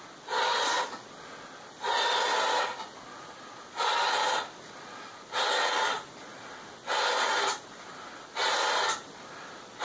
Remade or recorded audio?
recorded